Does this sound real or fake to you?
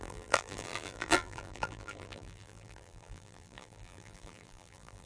fake